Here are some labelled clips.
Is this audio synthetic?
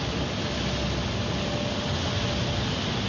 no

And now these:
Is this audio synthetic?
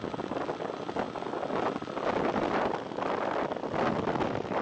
no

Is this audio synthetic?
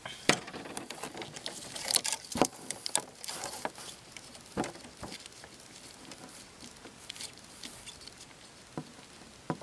no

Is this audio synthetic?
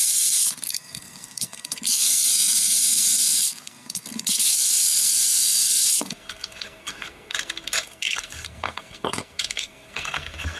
yes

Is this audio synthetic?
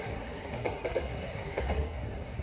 yes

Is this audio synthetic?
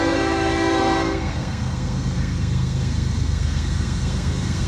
yes